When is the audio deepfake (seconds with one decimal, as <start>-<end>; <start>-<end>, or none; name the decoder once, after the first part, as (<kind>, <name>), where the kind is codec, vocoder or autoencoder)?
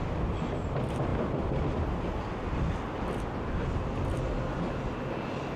none